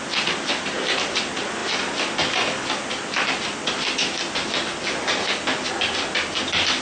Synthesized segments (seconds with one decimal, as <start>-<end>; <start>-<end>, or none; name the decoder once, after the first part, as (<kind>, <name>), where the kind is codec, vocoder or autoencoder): none

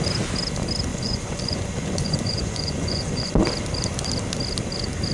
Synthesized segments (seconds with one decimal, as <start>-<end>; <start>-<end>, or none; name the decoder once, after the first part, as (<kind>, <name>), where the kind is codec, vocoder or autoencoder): 0.9-3.3 (vocoder, Vocos)

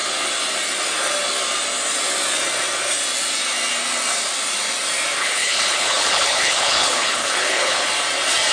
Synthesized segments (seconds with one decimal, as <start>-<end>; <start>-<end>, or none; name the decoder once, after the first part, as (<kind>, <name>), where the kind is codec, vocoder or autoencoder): 5.2-7.9 (codec, HILCodec)

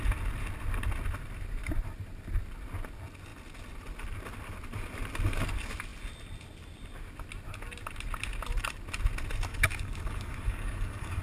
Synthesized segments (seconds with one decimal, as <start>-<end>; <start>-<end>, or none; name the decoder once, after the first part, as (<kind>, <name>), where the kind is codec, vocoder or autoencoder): 9.5-11.2 (codec, DAC)

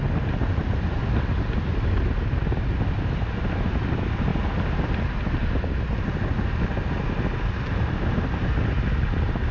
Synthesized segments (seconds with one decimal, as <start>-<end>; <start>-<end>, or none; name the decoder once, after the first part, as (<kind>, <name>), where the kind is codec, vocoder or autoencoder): none